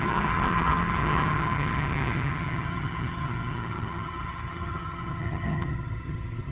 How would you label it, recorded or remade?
remade